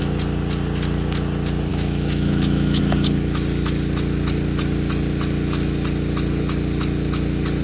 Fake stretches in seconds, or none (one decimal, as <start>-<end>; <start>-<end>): 1.7-2.8